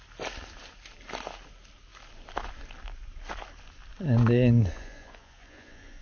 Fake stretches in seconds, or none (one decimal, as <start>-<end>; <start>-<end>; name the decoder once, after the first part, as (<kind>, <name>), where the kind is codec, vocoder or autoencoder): 4.7-6.0 (vocoder, Vocos)